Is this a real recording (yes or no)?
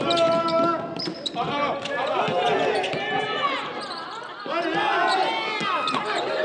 yes